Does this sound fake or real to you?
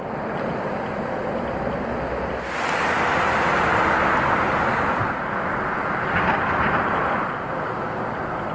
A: real